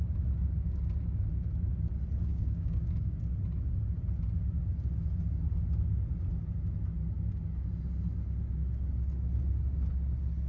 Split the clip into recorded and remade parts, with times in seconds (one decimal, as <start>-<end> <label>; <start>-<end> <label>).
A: 0.0-2.3 recorded; 2.3-3.2 remade; 3.2-10.5 recorded